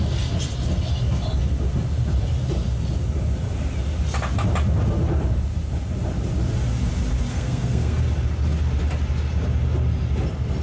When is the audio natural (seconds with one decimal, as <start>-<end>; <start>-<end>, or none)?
0.0-7.3; 8.0-10.6